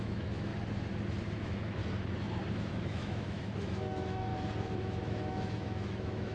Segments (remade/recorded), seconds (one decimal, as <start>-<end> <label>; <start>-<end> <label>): 0.0-0.5 remade; 0.5-1.3 recorded; 1.3-1.8 remade; 1.8-2.5 recorded; 2.5-4.3 remade; 4.3-4.8 recorded; 4.8-6.3 remade